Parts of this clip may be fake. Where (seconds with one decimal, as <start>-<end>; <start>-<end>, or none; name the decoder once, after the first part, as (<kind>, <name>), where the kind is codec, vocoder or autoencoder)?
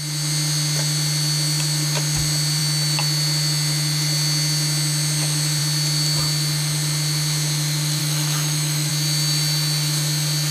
8.0-8.9 (autoencoder, DAC-VAE)